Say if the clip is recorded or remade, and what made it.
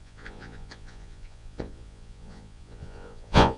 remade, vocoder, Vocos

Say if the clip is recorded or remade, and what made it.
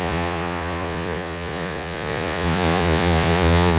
remade, vocoder, Vocos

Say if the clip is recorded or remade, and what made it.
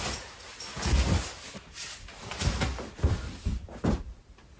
recorded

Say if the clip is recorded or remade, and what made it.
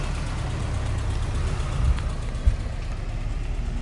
recorded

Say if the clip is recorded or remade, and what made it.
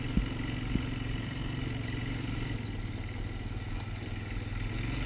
recorded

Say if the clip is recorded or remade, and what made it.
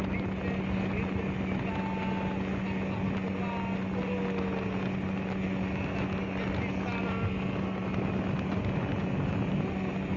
recorded